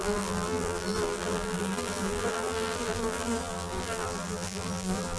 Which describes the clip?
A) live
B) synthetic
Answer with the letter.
B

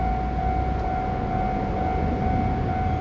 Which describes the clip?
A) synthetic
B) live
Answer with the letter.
B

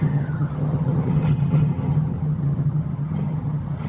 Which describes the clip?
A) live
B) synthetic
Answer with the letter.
B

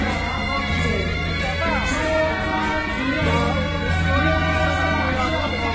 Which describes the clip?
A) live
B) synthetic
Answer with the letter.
A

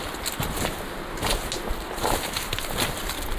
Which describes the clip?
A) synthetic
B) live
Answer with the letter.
B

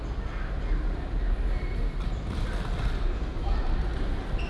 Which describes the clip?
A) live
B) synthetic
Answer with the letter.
A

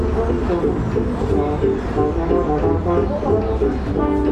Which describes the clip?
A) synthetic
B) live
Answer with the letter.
B